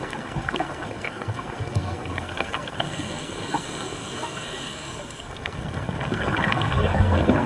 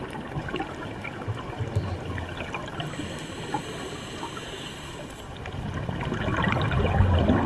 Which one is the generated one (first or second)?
first